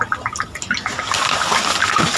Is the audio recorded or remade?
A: recorded